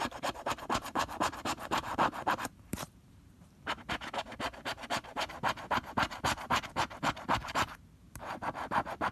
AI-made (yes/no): yes